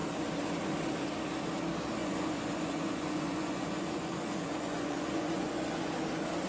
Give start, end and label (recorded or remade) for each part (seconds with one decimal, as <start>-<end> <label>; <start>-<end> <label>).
0.0-2.0 recorded; 2.0-5.9 remade; 5.9-6.5 recorded